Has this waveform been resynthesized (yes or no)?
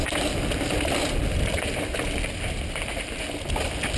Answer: no